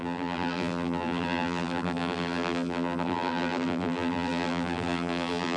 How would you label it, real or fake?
fake